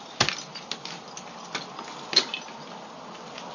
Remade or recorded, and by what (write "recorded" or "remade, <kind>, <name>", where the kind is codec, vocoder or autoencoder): recorded